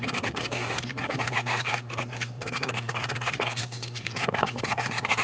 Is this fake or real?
fake